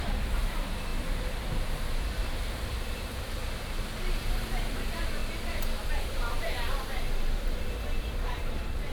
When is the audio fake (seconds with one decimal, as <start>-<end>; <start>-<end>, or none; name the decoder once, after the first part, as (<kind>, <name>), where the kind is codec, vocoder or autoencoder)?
0.0-0.9 (vocoder, BigVGAN v2); 2.2-3.4; 4.6-5.2; 6.0-8.9